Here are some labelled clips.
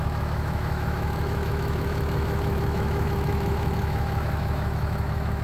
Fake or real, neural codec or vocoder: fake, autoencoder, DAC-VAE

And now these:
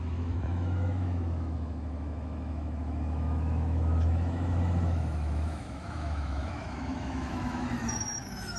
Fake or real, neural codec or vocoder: fake, autoencoder, DAC-VAE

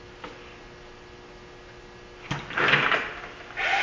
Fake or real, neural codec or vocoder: real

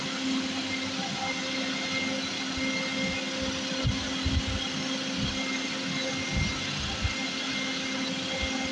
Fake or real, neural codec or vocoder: real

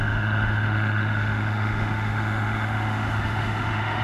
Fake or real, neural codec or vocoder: fake, autoencoder, DAC-VAE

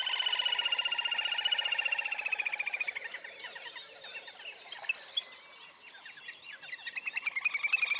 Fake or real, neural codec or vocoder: real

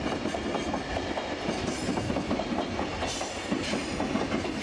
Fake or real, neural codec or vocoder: real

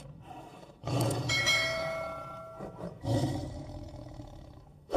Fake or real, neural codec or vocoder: fake, autoencoder, DAC-VAE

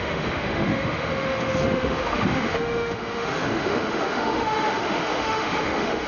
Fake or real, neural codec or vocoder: fake, autoencoder, DAC-VAE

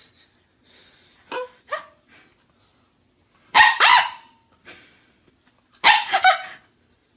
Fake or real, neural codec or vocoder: real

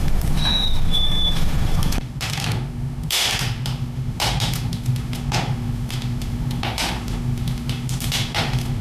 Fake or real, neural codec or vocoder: fake, autoencoder, DAC-VAE